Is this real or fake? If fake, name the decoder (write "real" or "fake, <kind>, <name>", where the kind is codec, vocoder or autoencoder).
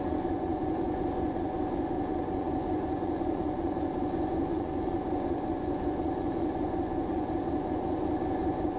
fake, vocoder, Vocos